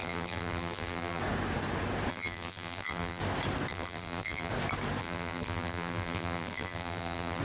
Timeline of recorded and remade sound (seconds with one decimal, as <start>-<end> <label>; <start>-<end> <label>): 0.0-1.2 remade; 1.2-2.1 recorded; 2.1-3.2 remade; 3.2-3.7 recorded; 3.7-4.5 remade; 4.5-5.0 recorded; 5.0-7.4 remade